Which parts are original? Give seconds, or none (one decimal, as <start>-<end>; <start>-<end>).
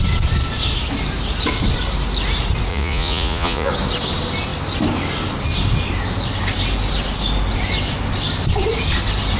0.0-2.7; 3.7-9.4